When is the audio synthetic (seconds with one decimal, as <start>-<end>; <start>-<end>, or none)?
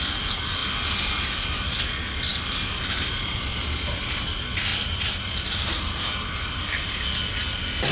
2.3-3.6; 4.7-5.2